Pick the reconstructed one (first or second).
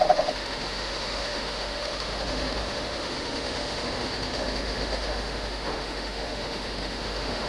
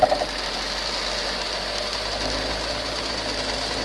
first